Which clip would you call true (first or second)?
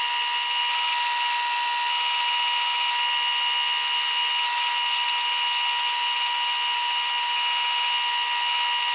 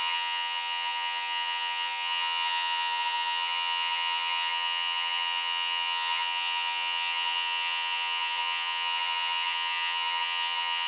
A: first